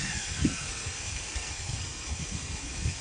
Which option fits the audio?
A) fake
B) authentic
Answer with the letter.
A